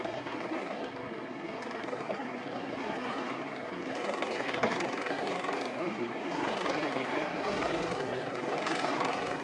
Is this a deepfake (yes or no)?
yes